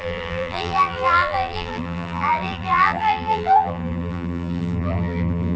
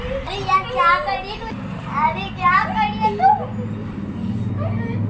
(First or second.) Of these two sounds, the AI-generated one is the first